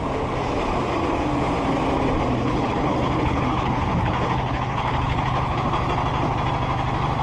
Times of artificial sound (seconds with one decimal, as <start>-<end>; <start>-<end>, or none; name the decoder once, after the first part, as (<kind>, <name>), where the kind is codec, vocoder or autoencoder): 2.4-5.6 (codec, HILCodec)